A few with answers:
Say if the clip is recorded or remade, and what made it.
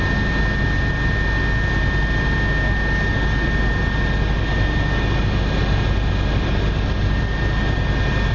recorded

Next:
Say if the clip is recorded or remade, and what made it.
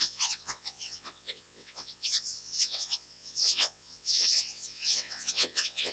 remade, vocoder, WaveNeXt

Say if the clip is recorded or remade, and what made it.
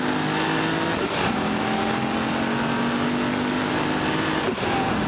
recorded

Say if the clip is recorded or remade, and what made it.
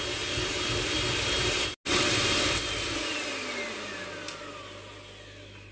recorded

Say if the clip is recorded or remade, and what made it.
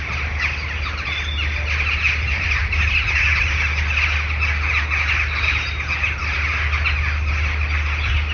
recorded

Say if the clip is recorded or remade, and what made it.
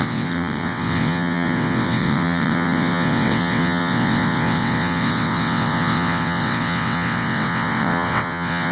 remade, vocoder, WaveNeXt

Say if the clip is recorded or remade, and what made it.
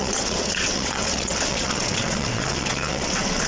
remade, vocoder, WaveNeXt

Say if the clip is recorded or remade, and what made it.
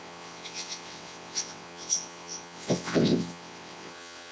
remade, vocoder, WaveNeXt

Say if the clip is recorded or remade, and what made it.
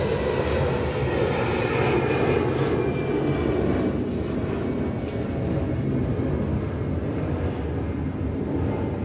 recorded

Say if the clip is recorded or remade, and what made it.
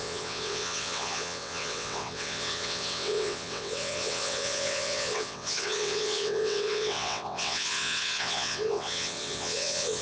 remade, vocoder, WaveNeXt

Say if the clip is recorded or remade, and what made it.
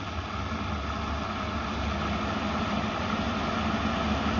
recorded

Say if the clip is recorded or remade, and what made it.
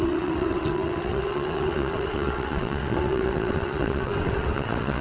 remade, vocoder, WaveNeXt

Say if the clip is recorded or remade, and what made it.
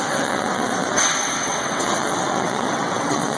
remade, vocoder, WaveNeXt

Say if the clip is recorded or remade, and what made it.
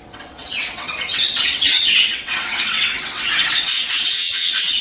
remade, vocoder, WaveNeXt